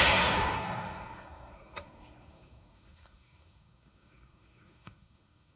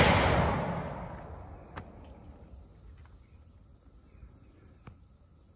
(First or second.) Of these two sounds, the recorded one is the second